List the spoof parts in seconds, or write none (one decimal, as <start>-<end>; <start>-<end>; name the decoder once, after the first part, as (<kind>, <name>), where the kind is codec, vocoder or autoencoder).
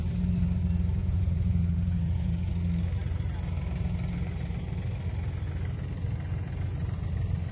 1.0-2.5 (vocoder, Vocos)